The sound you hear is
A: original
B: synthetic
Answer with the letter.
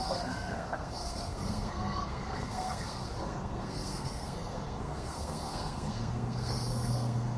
B